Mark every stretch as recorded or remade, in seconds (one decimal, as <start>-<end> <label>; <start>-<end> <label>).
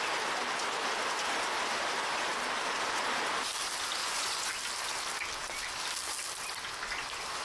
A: 0.0-4.0 recorded; 4.0-4.5 remade; 4.5-7.4 recorded